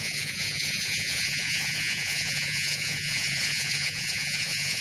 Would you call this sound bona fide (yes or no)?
no